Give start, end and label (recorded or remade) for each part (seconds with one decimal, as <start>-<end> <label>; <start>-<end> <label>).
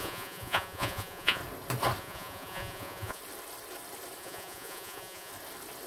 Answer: 0.0-1.4 remade; 1.4-2.0 recorded; 2.0-3.2 remade; 3.2-4.2 recorded; 4.2-5.3 remade; 5.3-5.9 recorded